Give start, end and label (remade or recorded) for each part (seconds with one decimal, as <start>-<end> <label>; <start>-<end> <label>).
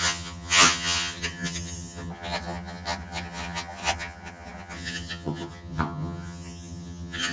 0.0-7.3 remade